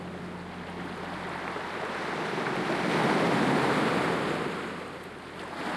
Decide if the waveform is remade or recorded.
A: recorded